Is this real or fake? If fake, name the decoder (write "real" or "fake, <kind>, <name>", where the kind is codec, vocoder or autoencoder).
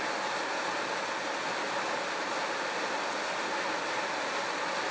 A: real